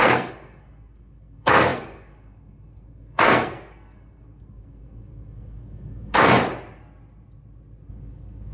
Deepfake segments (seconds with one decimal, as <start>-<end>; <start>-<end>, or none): 0.0-6.4; 7.9-8.5

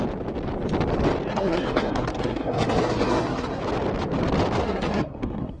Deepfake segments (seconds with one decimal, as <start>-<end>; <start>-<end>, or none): 1.3-3.6; 4.6-5.6

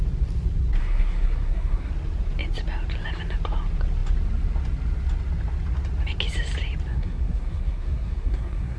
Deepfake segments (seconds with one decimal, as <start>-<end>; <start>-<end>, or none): 0.8-1.9; 6.9-8.8

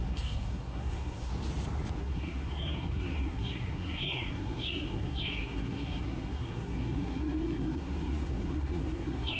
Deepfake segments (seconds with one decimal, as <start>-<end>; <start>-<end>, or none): 0.0-1.3; 2.0-9.4

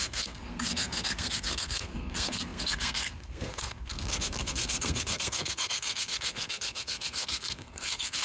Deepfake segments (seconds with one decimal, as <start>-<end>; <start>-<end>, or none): 0.0-8.2